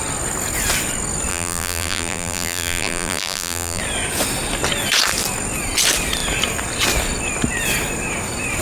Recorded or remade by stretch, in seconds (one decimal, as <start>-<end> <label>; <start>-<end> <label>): 0.0-1.3 recorded; 1.3-3.8 remade; 3.8-8.6 recorded

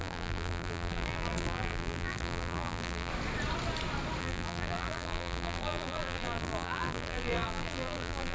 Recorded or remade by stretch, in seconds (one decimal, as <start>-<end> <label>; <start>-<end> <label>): 0.0-3.1 remade; 3.1-4.2 recorded; 4.2-8.3 remade